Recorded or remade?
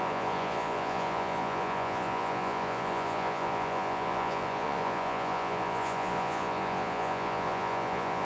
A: remade